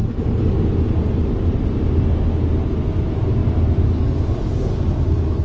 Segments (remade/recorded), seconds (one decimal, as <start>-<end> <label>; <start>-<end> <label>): 0.0-5.4 recorded

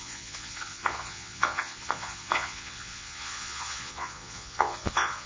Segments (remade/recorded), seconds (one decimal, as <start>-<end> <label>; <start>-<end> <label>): 0.0-5.3 remade

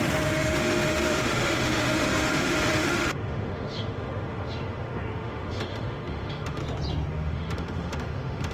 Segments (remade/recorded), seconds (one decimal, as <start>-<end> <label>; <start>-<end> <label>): 0.0-6.6 remade; 6.6-7.1 recorded; 7.1-8.5 remade

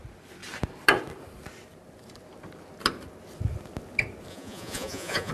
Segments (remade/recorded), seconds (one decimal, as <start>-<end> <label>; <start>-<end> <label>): 0.0-4.3 recorded; 4.3-5.3 remade

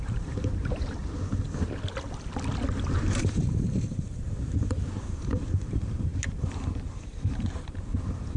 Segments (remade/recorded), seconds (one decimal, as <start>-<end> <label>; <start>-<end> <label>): 0.0-1.0 remade; 1.0-2.9 recorded; 2.9-6.1 remade; 6.1-6.7 recorded; 6.7-8.4 remade

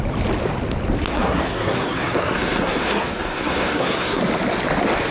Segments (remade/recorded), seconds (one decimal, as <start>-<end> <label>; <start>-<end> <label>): 0.0-1.1 recorded; 1.1-4.2 remade; 4.2-5.1 recorded